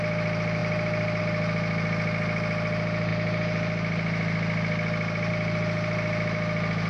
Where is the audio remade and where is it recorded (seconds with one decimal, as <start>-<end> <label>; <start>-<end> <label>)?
0.0-6.9 recorded